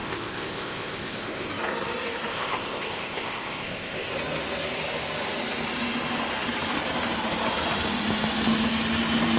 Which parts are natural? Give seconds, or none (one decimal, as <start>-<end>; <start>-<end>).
1.5-2.3; 4.1-9.4